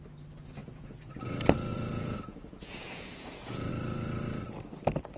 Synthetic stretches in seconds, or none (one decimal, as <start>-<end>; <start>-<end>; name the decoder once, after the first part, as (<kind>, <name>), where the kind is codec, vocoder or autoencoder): 0.6-1.1 (vocoder, Vocos); 1.7-3.7